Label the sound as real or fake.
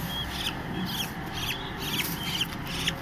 real